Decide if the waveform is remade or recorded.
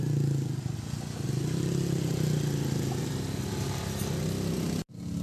recorded